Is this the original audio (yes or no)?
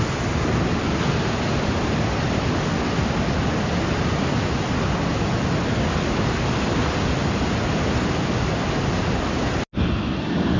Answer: yes